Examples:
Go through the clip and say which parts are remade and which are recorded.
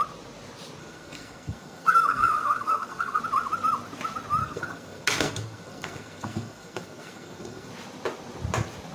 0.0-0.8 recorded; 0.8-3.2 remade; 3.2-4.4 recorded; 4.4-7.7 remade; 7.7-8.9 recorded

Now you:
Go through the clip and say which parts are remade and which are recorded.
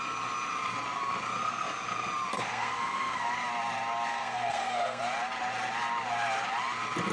0.0-2.3 recorded; 2.3-3.3 remade; 3.3-4.1 recorded; 4.1-5.0 remade; 5.0-7.1 recorded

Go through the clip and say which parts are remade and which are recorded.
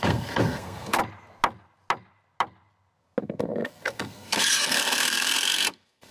0.0-1.0 remade; 1.0-3.2 recorded; 3.2-6.1 remade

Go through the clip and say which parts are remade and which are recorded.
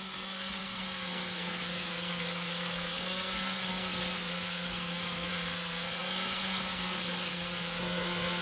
0.0-8.4 remade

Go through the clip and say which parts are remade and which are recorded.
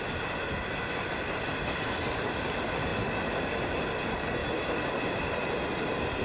0.0-6.2 recorded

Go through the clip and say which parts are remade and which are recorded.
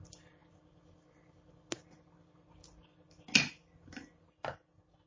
0.0-5.1 recorded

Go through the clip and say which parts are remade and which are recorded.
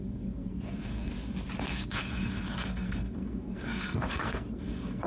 0.0-1.1 remade; 1.1-1.6 recorded; 1.6-5.1 remade